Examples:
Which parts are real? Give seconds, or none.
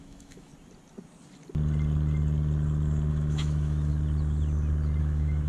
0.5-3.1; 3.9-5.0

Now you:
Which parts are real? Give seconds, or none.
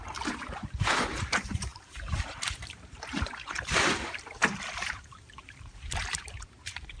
none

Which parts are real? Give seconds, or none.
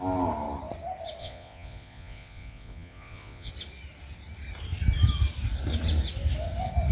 0.0-1.2; 3.5-6.9